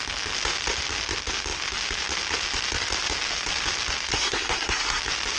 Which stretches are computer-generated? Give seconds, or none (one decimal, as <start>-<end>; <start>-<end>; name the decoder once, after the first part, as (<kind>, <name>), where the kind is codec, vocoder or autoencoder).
4.1-5.0 (codec, SNAC)